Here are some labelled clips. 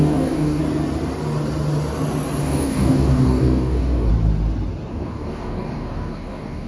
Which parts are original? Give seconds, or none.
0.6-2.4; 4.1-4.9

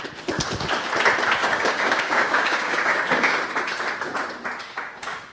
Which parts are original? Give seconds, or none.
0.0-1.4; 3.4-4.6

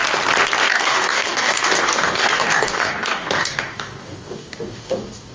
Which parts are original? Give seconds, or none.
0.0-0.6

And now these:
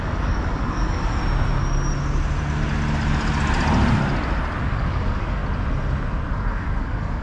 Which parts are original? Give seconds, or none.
1.2-4.6; 5.4-6.5

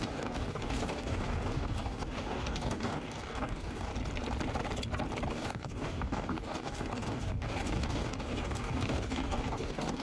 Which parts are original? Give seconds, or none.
3.9-5.3

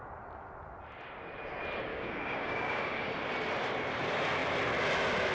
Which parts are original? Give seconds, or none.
0.0-1.9; 3.1-5.3